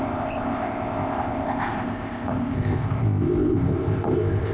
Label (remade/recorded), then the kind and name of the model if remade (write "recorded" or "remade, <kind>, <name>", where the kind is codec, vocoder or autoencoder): remade, codec, ZipCodec